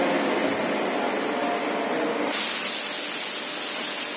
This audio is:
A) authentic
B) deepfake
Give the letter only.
A